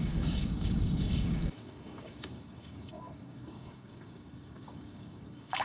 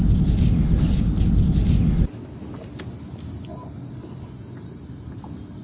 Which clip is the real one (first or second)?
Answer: second